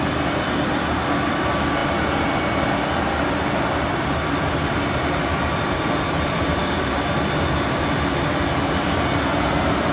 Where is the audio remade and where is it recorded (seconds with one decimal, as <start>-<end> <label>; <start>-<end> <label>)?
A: 0.0-6.6 recorded; 6.6-7.1 remade; 7.1-9.9 recorded

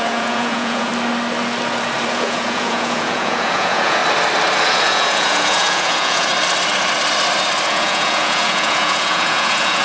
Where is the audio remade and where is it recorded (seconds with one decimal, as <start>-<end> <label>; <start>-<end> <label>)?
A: 0.0-0.9 remade; 0.9-2.1 recorded; 2.1-4.0 remade; 4.0-4.7 recorded; 4.7-6.3 remade; 6.3-7.7 recorded; 7.7-9.8 remade

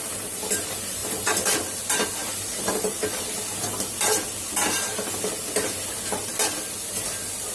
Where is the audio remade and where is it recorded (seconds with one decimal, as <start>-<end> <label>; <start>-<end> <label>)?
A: 0.0-7.5 remade